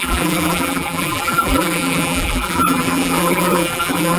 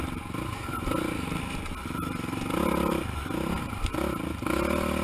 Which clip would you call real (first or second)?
second